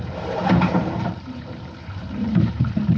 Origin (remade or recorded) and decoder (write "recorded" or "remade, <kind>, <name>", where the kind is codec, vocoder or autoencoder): remade, vocoder, BigVGAN v2